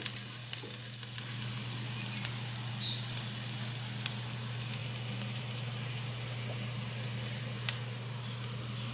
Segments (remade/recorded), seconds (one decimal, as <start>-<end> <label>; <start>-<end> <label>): 0.0-8.9 recorded